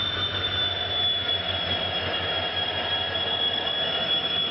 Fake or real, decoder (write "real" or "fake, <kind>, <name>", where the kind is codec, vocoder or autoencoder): real